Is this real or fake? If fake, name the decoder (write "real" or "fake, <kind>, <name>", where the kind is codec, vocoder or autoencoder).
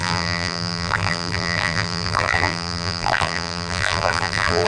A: fake, vocoder, BigVGAN v2